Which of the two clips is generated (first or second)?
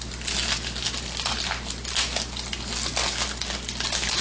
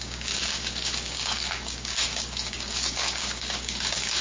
second